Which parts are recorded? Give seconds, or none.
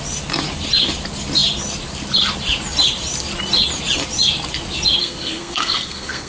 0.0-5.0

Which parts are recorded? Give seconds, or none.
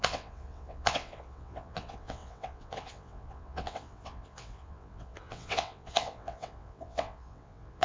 none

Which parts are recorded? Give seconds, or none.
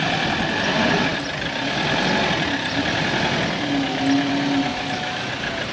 0.0-4.7; 5.3-5.7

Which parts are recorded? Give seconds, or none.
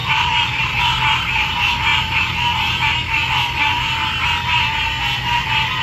0.6-5.8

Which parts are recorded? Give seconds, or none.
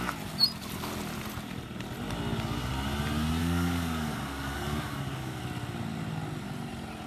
0.0-3.4; 5.4-7.1